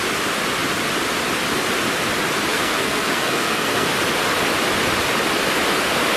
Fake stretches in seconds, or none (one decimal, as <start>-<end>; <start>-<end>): 2.5-3.9